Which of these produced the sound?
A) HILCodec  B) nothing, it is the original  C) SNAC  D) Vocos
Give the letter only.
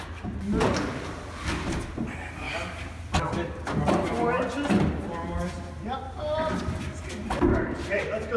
B